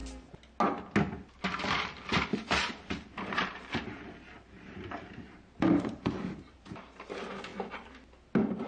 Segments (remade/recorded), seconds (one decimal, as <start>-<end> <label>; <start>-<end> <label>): 0.0-2.3 recorded; 2.3-7.1 remade; 7.1-8.7 recorded